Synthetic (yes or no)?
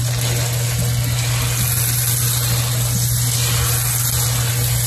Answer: no